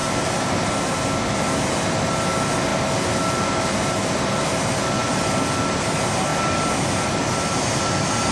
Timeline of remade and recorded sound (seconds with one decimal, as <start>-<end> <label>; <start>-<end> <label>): 0.0-8.3 recorded